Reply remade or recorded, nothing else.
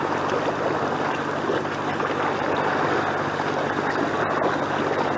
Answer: recorded